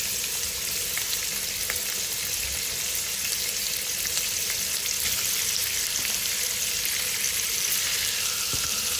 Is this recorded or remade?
recorded